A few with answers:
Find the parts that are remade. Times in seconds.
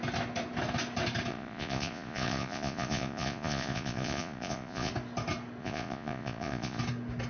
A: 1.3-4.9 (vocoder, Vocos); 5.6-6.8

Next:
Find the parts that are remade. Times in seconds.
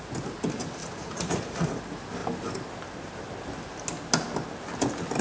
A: 0.8-1.8 (vocoder, Vocos)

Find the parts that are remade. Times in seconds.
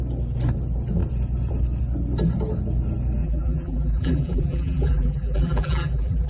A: 3.2-6.3 (vocoder, BigVGAN v2)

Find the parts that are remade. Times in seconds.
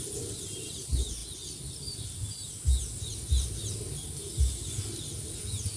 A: none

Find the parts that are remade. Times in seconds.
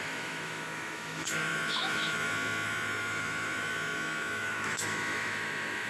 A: 0.0-5.9 (autoencoder, DAC-VAE)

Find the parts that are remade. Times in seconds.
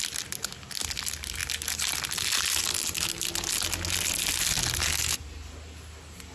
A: none